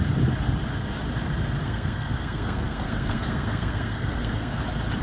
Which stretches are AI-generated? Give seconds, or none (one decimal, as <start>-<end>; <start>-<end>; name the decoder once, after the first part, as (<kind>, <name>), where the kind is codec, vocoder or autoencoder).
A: 1.6-4.6 (codec, SNAC)